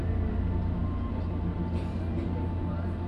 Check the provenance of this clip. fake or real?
real